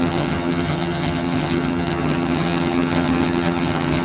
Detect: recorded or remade remade